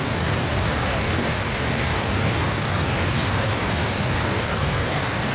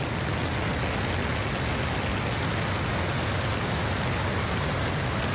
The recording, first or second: second